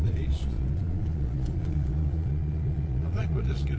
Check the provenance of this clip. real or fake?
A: fake